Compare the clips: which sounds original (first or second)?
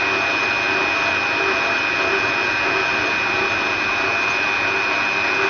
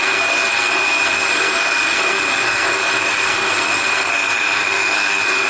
first